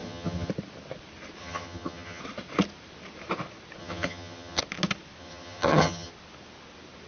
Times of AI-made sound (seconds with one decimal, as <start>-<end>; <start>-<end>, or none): 0.0-0.5; 1.4-2.2; 3.8-4.6; 5.2-6.1